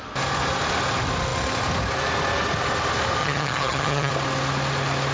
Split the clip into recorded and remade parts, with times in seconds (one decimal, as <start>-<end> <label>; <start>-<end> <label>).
0.0-3.2 recorded; 3.2-4.1 remade; 4.1-5.1 recorded